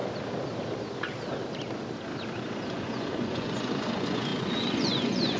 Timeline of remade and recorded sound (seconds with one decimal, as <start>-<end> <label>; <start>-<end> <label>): 0.0-2.7 recorded; 2.7-5.4 remade